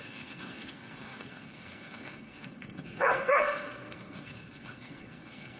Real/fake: fake